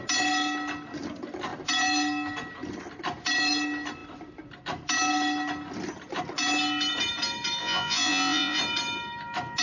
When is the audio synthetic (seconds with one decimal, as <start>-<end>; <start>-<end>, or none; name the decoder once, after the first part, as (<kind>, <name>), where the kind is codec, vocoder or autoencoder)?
7.6-8.6 (vocoder, Vocos)